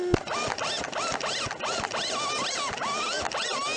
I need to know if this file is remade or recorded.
recorded